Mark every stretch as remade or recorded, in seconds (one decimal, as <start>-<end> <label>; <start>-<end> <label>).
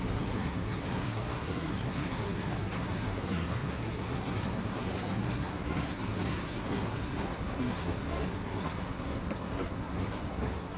0.0-10.8 remade